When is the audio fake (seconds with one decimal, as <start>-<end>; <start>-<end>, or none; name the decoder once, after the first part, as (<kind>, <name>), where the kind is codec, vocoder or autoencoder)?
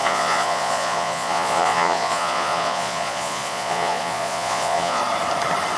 0.0-5.0 (vocoder, Vocos)